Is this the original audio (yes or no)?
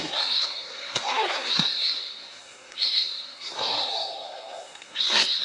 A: no